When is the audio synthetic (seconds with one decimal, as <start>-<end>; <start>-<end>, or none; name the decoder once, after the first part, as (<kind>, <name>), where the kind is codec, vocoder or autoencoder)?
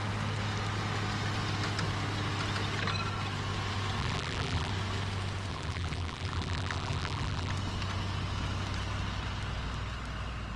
4.0-4.7 (vocoder, BigVGAN v2); 5.5-7.5